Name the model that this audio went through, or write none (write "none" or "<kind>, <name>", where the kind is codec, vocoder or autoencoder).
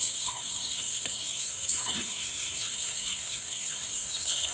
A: codec, SNAC